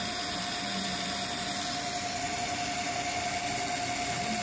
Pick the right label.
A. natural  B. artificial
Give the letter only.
A